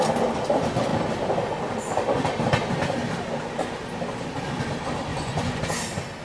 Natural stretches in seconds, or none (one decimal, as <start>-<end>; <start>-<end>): 0.0-5.1; 5.6-6.2